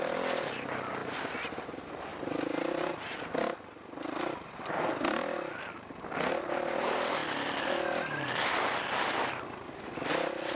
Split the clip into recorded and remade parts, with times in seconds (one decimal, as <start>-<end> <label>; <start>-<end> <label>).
0.0-1.0 recorded; 1.0-1.5 remade; 1.5-2.1 recorded; 2.1-2.9 remade; 2.9-7.2 recorded; 7.2-10.1 remade; 10.1-10.6 recorded

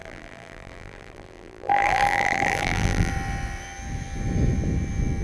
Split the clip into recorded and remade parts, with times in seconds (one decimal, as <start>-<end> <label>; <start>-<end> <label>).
0.0-3.1 remade; 3.1-5.2 recorded